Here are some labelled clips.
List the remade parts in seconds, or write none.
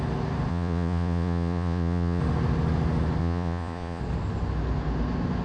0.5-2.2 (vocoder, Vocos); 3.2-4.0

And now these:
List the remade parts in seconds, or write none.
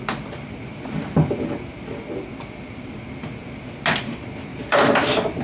4.5-5.4 (vocoder, BigVGAN v2)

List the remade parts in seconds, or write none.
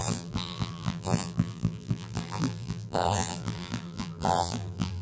0.0-5.0 (vocoder, BigVGAN v2)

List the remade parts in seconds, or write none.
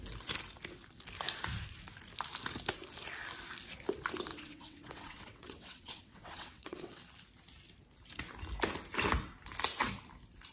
4.3-7.0 (vocoder, WaveNeXt)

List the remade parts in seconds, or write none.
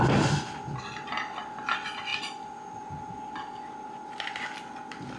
none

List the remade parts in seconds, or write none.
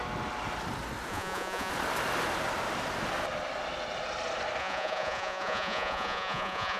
1.1-1.7 (vocoder, Vocos); 4.6-6.8